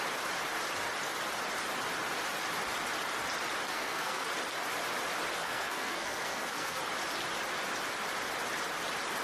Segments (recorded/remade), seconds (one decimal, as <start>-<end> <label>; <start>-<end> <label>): 0.0-3.7 recorded; 3.7-4.3 remade; 4.3-5.4 recorded; 5.4-6.8 remade; 6.8-9.2 recorded